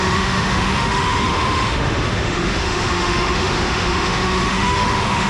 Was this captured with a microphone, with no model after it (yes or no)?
no